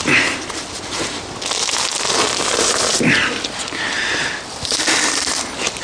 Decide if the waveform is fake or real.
real